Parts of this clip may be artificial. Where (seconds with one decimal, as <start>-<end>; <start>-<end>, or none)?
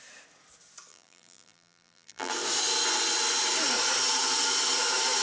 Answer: 0.9-2.3